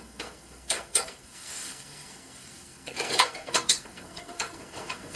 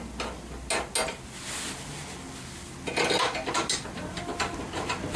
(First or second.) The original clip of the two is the second